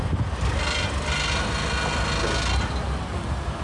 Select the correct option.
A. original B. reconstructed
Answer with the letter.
A